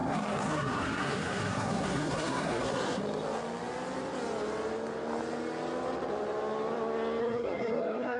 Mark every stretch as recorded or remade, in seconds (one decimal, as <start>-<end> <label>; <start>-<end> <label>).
0.0-3.0 remade; 3.0-7.2 recorded; 7.2-8.2 remade